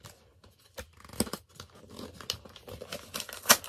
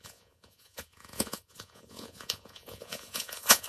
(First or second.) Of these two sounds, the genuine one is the first